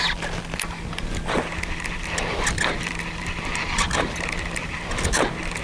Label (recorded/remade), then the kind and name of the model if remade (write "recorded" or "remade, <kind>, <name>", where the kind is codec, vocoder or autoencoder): recorded